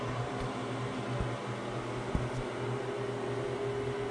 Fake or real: real